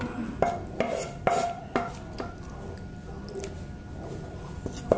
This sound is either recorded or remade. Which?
recorded